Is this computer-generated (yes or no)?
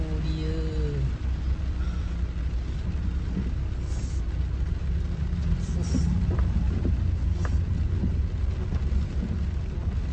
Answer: no